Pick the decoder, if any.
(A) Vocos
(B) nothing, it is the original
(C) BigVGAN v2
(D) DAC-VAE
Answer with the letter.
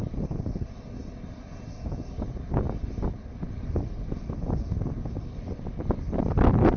B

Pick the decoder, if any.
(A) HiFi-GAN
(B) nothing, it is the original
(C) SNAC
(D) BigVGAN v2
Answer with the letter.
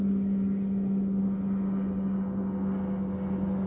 B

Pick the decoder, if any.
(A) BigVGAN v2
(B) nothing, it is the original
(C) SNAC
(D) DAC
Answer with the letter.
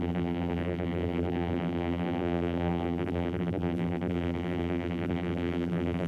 A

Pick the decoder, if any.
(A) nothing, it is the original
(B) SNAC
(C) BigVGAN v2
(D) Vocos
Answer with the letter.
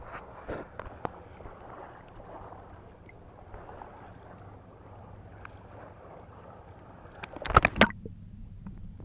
A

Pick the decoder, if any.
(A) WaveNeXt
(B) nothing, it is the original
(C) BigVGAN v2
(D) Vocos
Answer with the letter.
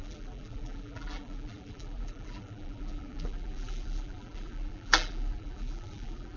C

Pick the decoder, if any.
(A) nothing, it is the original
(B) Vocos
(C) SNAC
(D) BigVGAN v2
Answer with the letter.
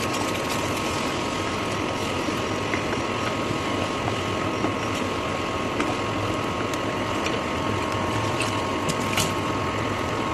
A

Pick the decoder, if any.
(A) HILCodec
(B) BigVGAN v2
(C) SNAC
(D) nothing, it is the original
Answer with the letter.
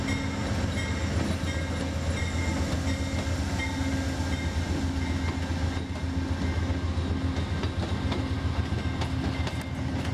D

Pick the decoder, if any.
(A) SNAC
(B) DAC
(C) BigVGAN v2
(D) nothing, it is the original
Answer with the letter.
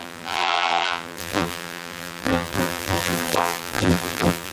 C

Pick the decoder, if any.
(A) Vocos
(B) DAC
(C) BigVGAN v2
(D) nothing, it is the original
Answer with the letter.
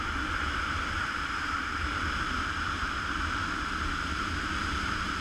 C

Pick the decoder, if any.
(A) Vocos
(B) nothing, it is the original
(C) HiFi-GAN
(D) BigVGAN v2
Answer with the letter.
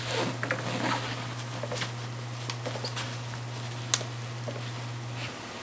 B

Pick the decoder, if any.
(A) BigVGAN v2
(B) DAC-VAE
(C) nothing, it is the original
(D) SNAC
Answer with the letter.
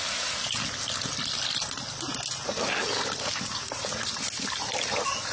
C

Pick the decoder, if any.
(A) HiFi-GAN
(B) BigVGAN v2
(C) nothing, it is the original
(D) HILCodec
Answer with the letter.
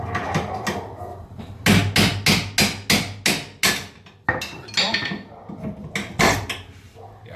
C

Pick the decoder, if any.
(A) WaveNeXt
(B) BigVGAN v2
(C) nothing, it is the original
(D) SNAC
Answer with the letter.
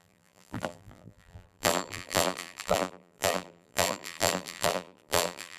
B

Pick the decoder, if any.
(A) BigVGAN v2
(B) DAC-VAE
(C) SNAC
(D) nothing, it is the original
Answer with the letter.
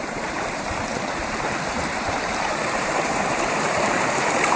A